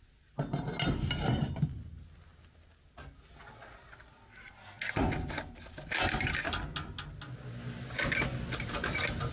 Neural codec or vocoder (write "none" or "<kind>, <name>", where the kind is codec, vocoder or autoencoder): none